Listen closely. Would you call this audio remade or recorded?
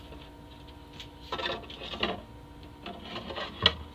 recorded